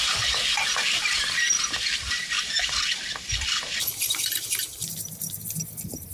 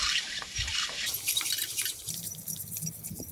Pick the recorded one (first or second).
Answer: first